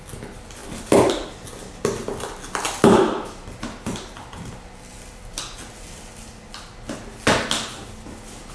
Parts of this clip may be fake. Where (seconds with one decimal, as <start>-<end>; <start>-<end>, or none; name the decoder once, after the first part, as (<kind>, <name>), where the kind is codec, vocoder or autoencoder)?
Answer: none

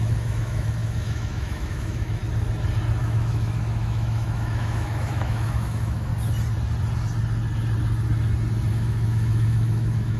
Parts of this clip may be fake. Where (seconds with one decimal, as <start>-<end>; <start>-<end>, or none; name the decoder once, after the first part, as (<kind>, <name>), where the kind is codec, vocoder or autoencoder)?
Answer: 0.0-2.2 (autoencoder, DAC-VAE); 3.0-6.1; 8.7-10.2

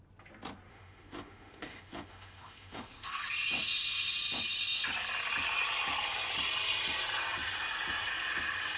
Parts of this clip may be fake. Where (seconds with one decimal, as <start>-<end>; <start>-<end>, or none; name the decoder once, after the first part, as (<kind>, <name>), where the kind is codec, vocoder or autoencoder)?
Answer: 0.7-3.2 (autoencoder, DAC-VAE)

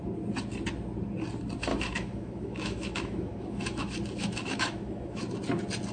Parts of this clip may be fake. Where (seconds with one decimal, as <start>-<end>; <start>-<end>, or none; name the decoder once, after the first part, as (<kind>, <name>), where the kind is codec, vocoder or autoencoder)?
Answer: 1.7-5.2 (autoencoder, DAC-VAE)

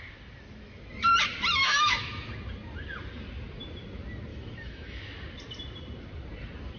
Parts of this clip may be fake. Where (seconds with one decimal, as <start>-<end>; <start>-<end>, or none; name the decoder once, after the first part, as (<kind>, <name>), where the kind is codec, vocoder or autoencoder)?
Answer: 1.6-2.3 (autoencoder, DAC-VAE); 4.3-5.0

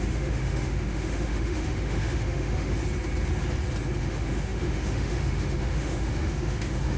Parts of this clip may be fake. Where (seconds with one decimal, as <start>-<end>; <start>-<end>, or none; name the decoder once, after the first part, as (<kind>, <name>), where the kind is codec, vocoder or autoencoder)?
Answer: 0.0-2.8 (autoencoder, DAC-VAE); 4.0-7.0

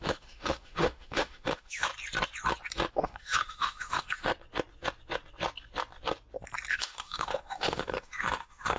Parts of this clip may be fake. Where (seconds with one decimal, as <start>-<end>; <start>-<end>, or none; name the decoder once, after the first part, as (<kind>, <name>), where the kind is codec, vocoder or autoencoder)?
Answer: 0.0-1.9 (autoencoder, DAC-VAE); 2.9-4.3; 6.7-8.8